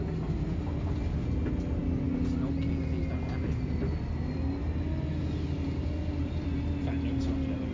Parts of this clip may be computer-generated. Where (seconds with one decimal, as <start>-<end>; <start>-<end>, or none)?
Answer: none